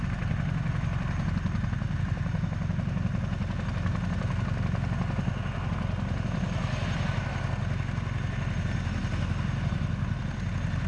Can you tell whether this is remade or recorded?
recorded